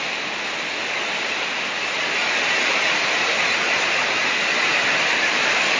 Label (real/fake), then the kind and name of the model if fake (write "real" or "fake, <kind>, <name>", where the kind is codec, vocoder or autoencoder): real